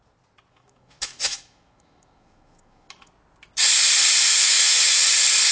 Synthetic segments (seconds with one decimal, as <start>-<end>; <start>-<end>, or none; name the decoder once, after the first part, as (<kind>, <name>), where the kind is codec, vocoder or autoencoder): 0.5-3.1 (autoencoder, DAC-VAE); 4.3-5.0